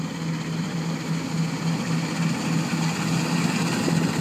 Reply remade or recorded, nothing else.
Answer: recorded